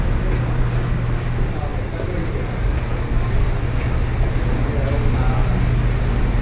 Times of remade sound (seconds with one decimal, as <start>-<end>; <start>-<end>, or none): none

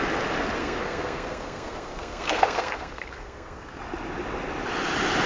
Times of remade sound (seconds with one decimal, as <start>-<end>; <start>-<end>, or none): 0.6-3.8

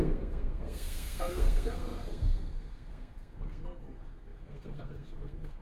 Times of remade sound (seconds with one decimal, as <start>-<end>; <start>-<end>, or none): 0.0-5.6

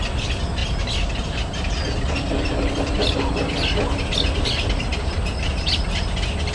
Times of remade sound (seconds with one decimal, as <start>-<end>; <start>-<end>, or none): none

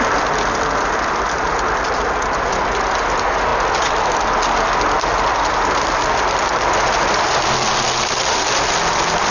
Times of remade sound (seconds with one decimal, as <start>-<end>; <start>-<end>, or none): none

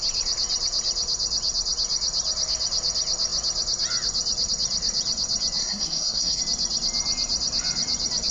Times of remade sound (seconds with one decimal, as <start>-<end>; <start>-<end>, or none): 5.6-6.4

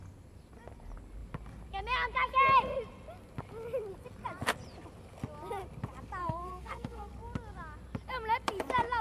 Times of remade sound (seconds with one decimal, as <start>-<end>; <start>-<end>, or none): 6.2-7.1

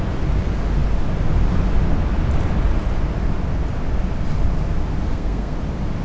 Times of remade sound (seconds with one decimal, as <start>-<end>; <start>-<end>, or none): 5.1-5.6